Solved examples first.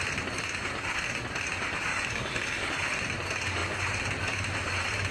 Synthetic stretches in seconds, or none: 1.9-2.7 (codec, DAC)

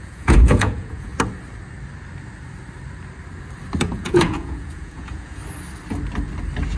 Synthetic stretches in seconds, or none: 0.0-1.1 (vocoder, Vocos); 3.8-5.4

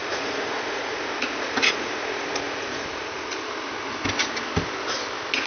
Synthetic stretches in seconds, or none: 0.0-3.3 (vocoder, Vocos)